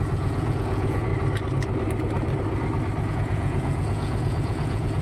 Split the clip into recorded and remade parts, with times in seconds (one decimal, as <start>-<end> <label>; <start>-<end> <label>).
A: 0.0-1.1 remade; 1.1-3.1 recorded; 3.1-5.0 remade